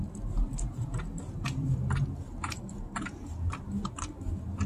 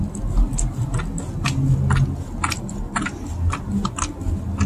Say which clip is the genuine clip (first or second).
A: second